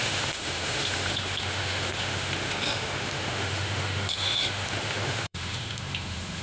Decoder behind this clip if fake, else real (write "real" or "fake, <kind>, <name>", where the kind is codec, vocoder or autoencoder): fake, autoencoder, DAC-VAE